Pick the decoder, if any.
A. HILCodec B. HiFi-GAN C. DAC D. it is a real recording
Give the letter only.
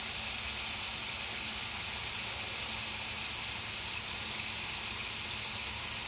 D